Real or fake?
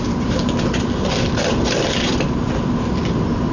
real